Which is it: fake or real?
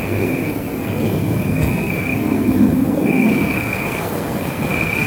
fake